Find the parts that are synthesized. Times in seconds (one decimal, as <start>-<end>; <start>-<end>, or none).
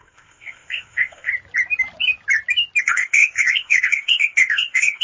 0.0-1.3; 2.8-5.0